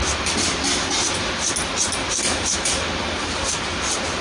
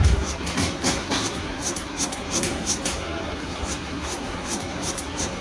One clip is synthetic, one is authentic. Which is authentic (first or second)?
first